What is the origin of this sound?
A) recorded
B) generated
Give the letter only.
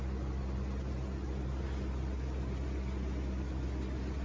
A